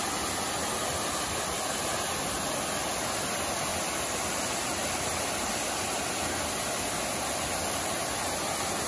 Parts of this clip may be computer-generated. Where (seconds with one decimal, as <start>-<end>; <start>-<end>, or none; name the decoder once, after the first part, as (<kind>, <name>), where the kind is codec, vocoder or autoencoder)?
none